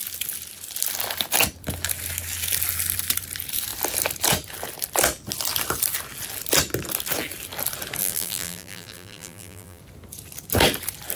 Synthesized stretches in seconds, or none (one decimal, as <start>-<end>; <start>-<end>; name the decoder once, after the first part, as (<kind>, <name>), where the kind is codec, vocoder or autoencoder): 8.0-9.8 (vocoder, BigVGAN v2)